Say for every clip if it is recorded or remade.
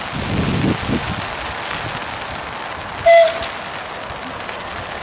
recorded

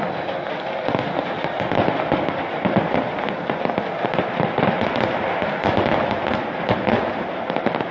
recorded